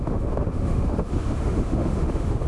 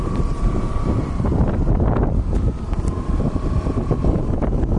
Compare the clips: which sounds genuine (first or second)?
second